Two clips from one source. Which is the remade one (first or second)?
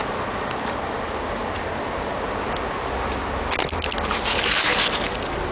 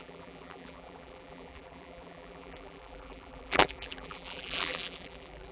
second